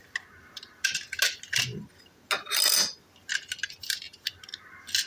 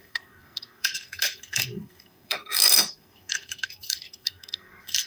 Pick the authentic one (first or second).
first